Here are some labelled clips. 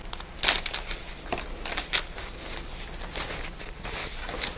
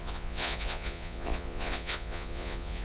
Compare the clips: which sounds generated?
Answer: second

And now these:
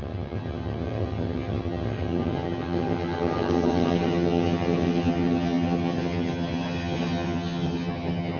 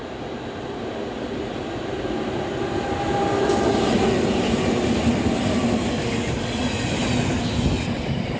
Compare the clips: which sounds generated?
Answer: first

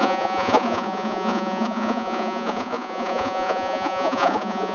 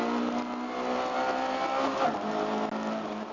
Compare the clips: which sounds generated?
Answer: first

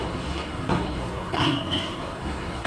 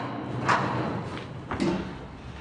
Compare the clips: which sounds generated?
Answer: first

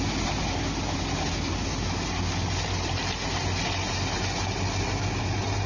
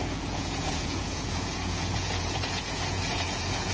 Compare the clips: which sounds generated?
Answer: second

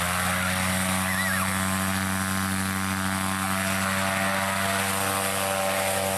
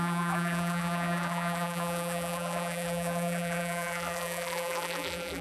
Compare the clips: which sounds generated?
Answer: second